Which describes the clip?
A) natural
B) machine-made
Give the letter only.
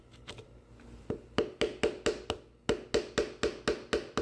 A